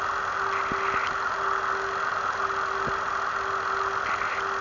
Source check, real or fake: real